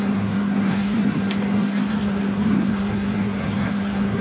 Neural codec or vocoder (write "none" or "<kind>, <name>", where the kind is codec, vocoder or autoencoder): codec, SNAC